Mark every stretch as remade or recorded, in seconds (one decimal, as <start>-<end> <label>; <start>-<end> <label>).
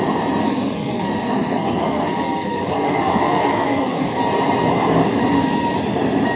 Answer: 0.0-0.4 recorded; 0.4-4.2 remade; 4.2-6.4 recorded